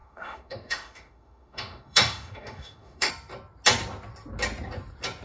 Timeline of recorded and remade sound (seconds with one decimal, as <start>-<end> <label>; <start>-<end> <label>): 0.0-3.1 remade; 3.1-5.2 recorded